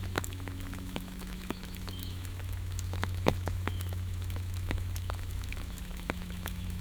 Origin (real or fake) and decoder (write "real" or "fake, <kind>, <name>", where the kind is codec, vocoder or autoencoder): fake, autoencoder, DAC-VAE